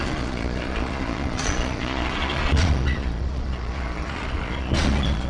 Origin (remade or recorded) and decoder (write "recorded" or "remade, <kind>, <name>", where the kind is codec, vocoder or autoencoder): remade, vocoder, Vocos